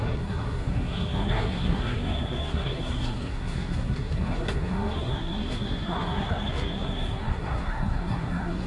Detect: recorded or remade remade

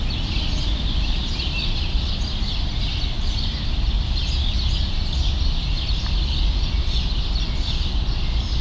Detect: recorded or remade recorded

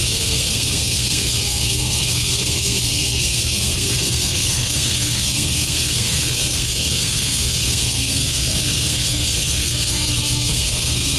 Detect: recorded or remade remade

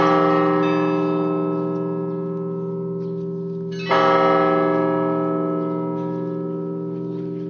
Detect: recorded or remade recorded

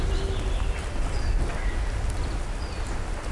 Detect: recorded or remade recorded